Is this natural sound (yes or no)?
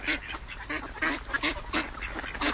no